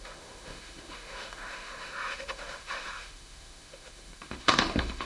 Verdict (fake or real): fake